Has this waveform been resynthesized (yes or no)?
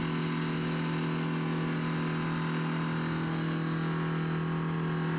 no